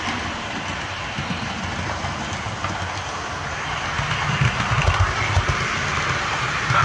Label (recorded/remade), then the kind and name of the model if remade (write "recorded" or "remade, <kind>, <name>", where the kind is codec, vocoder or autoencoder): recorded